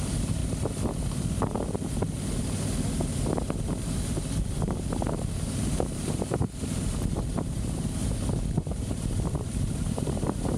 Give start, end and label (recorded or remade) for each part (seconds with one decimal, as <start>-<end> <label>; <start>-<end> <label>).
0.0-0.4 remade; 0.4-3.8 recorded; 3.8-8.0 remade; 8.0-8.5 recorded; 8.5-10.6 remade

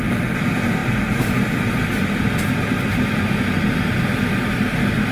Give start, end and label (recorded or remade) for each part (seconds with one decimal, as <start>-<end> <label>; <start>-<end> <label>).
0.0-5.1 recorded

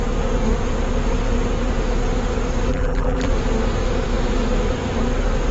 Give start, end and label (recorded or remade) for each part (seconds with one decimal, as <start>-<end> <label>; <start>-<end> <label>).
0.0-2.7 recorded; 2.7-3.3 remade; 3.3-5.5 recorded

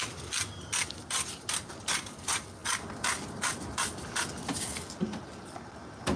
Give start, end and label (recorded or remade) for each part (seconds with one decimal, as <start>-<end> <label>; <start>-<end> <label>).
0.0-6.2 recorded

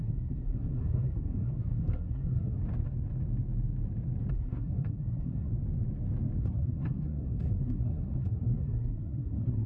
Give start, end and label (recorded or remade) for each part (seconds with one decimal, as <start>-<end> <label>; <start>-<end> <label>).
0.0-2.6 remade; 2.6-4.3 recorded; 4.3-5.5 remade; 5.5-6.4 recorded; 6.4-9.7 remade

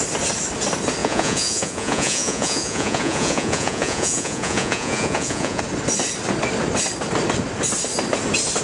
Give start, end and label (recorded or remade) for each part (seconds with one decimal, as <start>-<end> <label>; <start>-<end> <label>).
0.0-1.0 recorded; 1.0-5.6 remade; 5.6-8.6 recorded

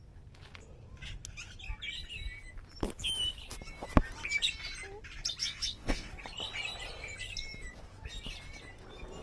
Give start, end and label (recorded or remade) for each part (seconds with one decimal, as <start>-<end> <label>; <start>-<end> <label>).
0.0-5.4 recorded; 5.4-6.1 remade; 6.1-9.2 recorded